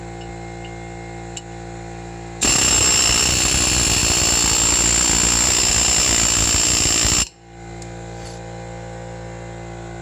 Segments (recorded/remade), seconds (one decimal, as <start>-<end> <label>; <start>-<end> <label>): 0.0-10.0 recorded